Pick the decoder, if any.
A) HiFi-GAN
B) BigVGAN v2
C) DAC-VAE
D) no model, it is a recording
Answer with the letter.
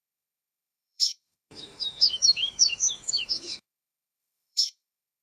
C